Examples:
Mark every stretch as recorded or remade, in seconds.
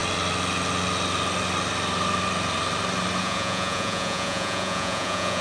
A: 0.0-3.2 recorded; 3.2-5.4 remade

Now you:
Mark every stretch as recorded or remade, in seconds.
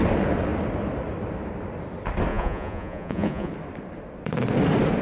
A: 0.0-2.3 recorded; 2.3-3.5 remade; 3.5-5.0 recorded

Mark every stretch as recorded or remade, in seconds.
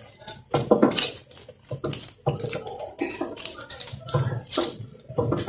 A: 0.0-4.5 recorded; 4.5-5.1 remade; 5.1-5.5 recorded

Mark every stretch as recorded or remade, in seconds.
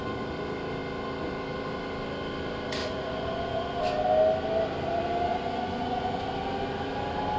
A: 0.0-2.8 recorded; 2.8-3.8 remade; 3.8-5.3 recorded; 5.3-6.2 remade; 6.2-7.4 recorded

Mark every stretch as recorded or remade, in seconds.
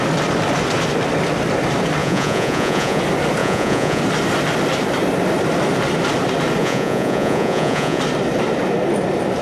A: 0.0-2.0 recorded; 2.0-3.0 remade; 3.0-3.4 recorded; 3.4-4.0 remade; 4.0-6.6 recorded; 6.6-8.0 remade; 8.0-9.4 recorded